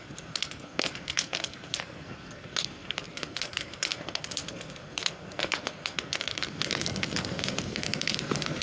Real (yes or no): no